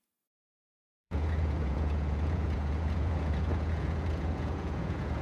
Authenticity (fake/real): fake